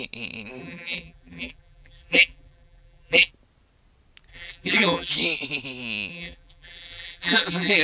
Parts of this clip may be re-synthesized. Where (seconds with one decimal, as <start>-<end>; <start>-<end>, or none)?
0.6-3.3; 4.3-5.1; 6.1-7.8